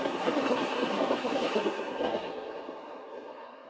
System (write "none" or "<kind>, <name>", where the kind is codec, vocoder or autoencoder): codec, SNAC